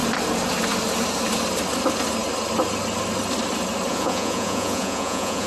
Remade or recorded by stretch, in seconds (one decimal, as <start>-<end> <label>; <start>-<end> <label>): 0.0-3.9 recorded; 3.9-5.5 remade